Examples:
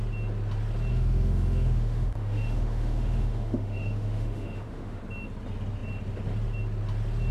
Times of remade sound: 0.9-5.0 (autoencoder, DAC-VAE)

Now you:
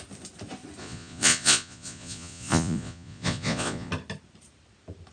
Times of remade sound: 0.8-3.9 (vocoder, Vocos)